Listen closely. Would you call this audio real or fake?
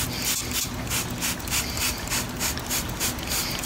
real